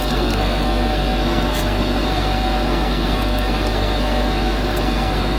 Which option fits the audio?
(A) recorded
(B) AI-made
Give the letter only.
B